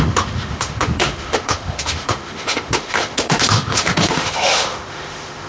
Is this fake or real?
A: fake